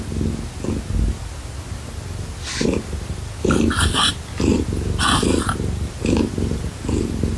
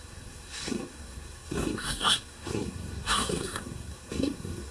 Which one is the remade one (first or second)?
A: second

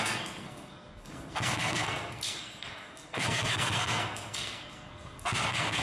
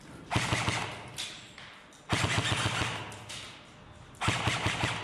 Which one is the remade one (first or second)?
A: first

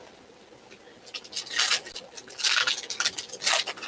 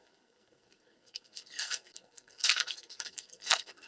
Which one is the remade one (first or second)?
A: second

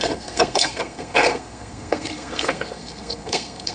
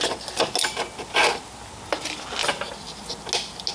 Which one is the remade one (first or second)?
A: first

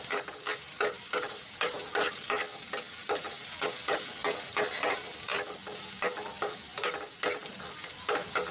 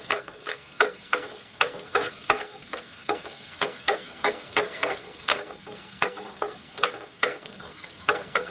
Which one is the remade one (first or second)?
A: second